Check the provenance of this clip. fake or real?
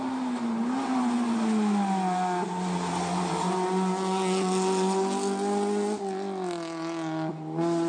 real